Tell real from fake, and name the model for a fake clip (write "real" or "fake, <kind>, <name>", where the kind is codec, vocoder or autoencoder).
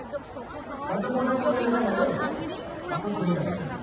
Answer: fake, vocoder, BigVGAN v2